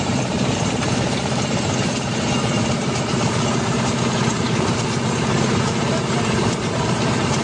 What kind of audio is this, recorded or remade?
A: remade